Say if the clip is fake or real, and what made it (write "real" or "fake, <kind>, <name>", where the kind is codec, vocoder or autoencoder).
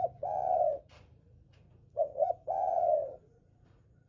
fake, vocoder, Vocos